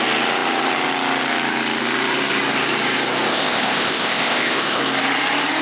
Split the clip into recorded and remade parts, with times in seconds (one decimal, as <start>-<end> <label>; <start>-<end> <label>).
0.0-3.3 recorded; 3.3-4.8 remade; 4.8-5.6 recorded